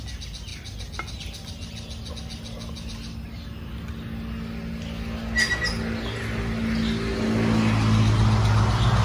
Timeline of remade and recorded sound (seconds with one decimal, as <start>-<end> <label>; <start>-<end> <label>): 0.0-9.0 recorded